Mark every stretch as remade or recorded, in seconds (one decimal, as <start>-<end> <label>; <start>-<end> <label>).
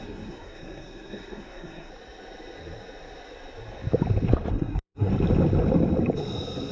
0.0-1.9 remade; 1.9-4.5 recorded; 4.5-5.1 remade; 5.1-6.7 recorded